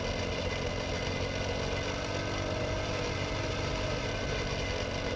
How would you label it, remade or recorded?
recorded